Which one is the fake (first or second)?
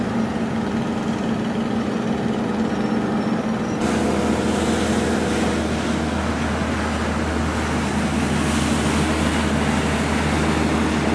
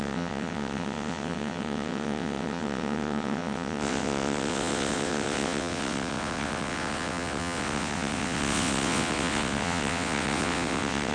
second